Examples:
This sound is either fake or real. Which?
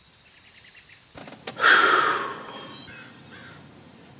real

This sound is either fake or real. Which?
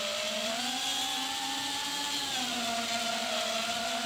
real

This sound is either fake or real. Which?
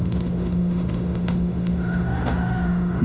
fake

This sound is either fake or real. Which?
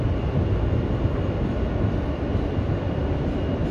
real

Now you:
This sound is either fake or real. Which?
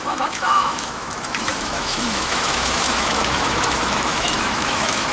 fake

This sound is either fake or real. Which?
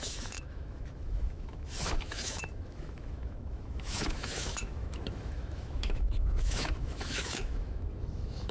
fake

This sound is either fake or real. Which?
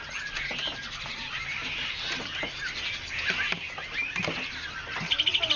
real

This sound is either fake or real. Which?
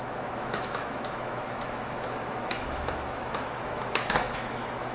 fake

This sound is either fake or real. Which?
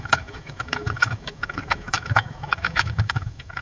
fake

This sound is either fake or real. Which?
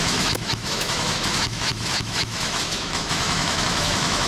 fake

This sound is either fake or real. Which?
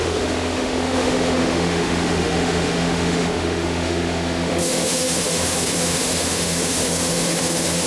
fake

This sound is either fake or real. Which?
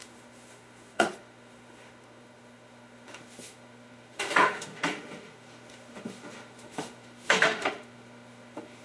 fake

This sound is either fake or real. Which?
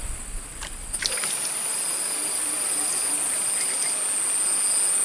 real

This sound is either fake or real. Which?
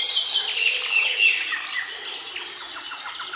real